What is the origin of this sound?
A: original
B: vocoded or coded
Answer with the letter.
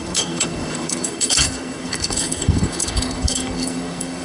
B